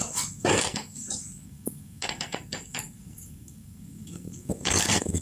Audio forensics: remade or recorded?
remade